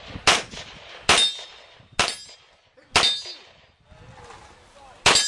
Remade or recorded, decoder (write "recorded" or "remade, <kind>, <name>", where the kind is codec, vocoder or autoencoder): recorded